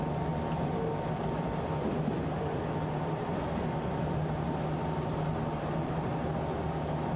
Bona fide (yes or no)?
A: yes